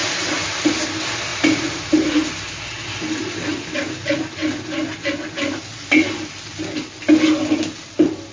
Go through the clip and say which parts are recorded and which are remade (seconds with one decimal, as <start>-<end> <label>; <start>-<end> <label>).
0.0-1.3 recorded; 1.3-1.9 remade; 1.9-8.3 recorded